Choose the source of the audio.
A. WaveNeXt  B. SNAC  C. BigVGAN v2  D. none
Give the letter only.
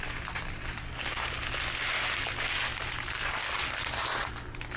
D